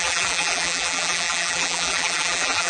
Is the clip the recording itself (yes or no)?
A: no